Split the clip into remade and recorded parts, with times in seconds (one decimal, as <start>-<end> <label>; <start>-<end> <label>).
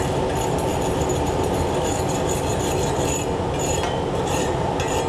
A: 0.0-5.1 recorded